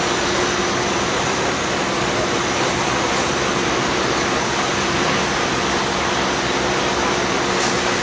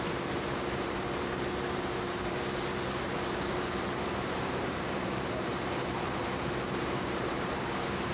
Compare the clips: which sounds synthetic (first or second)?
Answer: second